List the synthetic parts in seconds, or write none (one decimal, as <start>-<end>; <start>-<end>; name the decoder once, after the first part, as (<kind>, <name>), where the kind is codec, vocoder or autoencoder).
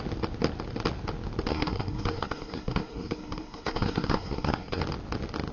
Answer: 1.5-4.8 (codec, SNAC)